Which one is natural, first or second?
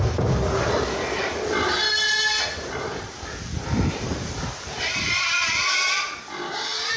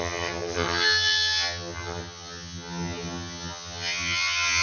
first